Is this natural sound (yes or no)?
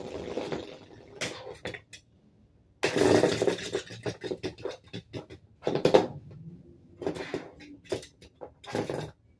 yes